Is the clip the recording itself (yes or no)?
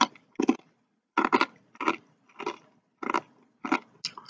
yes